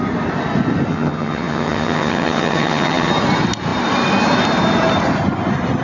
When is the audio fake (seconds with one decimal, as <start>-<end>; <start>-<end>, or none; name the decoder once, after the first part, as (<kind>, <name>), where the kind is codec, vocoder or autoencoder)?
0.9-3.1 (vocoder, HiFi-GAN)